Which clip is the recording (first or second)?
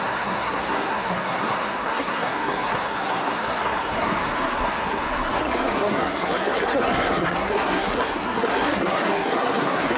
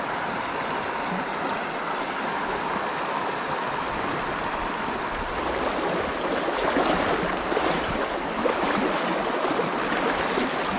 second